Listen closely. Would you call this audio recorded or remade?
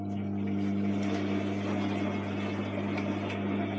recorded